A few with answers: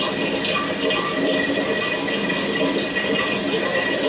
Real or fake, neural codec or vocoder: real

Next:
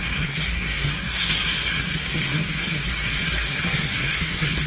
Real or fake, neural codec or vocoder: fake, codec, SNAC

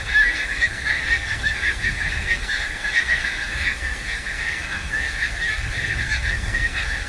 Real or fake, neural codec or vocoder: fake, codec, SNAC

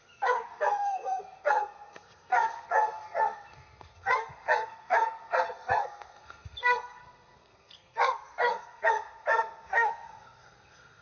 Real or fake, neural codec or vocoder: fake, codec, SNAC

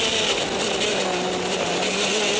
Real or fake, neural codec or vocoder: real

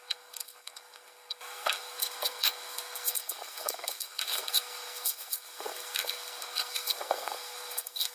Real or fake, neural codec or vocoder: fake, codec, SNAC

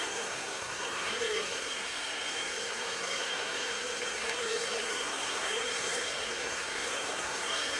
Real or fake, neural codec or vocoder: fake, codec, SNAC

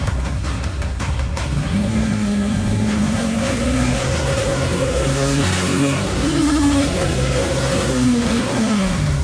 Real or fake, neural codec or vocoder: fake, codec, SNAC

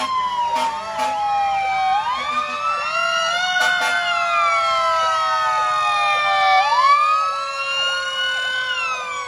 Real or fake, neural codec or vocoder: real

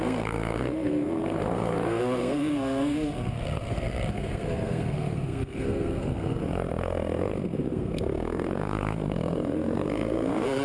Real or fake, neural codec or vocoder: fake, codec, SNAC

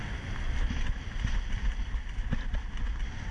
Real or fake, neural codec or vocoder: real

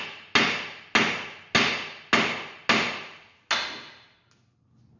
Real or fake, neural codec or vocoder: real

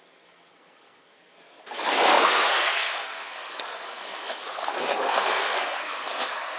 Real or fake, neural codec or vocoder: fake, codec, SNAC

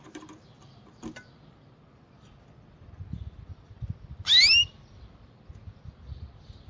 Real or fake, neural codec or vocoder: real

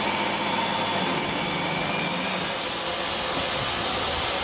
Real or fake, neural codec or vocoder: real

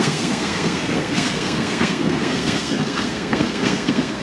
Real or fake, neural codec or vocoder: fake, codec, SNAC